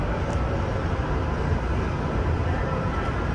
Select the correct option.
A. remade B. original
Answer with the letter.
B